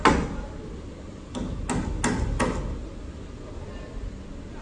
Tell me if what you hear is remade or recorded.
recorded